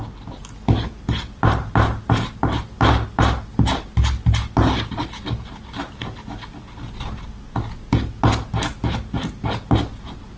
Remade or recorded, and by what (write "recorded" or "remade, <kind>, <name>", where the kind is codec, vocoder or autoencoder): recorded